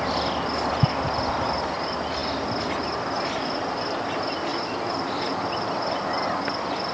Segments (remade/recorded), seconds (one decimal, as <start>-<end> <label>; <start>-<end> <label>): 0.0-6.9 recorded